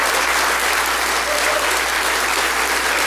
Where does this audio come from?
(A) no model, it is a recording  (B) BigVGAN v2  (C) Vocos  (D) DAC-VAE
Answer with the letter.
A